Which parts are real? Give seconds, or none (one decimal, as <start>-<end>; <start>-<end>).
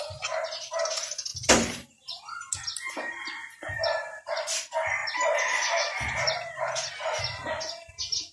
0.0-8.3